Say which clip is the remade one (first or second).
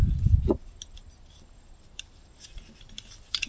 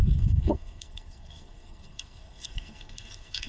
second